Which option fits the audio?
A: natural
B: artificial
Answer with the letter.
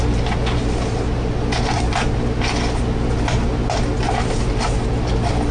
A